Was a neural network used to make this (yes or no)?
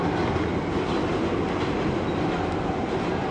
no